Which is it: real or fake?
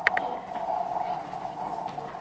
real